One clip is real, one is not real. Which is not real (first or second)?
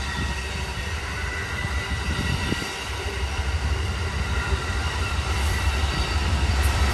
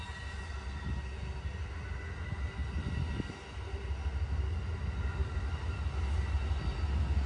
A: first